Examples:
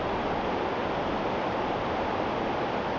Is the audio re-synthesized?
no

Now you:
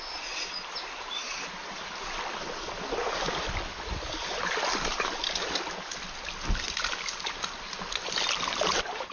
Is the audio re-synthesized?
no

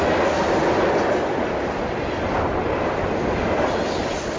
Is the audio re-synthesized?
no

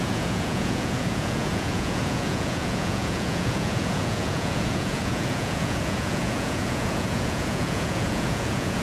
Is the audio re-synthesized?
yes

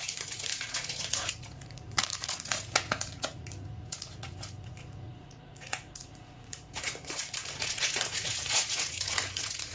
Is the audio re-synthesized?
yes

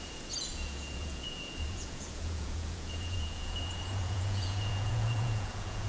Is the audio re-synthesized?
yes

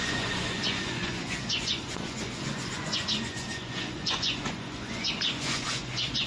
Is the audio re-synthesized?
yes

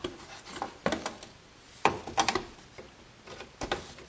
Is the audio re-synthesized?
no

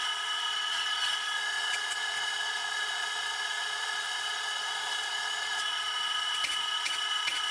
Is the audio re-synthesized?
yes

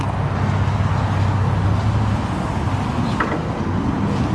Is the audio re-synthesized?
no